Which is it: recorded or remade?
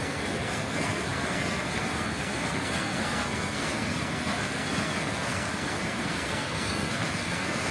remade